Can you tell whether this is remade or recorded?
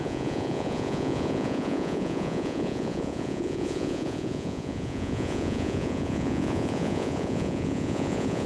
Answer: remade